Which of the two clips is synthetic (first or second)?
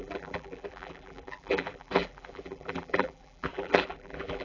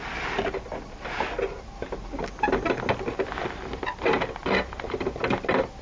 first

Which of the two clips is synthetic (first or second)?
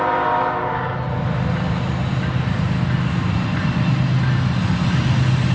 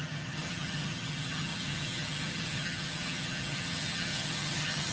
second